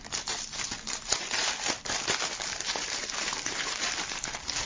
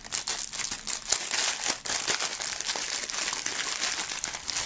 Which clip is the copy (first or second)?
first